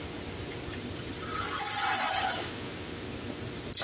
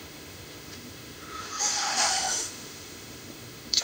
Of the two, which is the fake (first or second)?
second